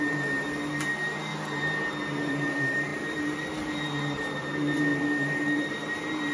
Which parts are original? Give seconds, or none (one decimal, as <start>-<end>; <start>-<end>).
1.3-2.3

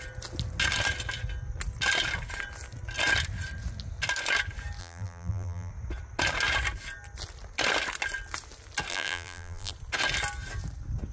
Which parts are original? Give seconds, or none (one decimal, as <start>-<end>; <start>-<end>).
0.0-4.8; 5.7-8.9; 9.7-11.1

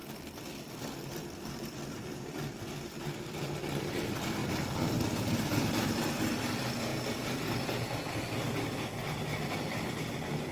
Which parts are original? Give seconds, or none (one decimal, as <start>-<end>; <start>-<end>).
0.0-1.2; 6.9-9.7

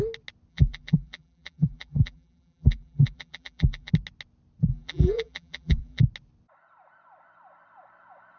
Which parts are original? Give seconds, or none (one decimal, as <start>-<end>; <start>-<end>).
0.0-0.5; 3.9-4.7; 6.0-8.4